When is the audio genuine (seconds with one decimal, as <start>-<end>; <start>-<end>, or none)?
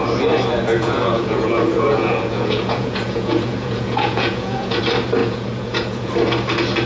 0.0-0.7; 4.8-5.2; 6.1-6.9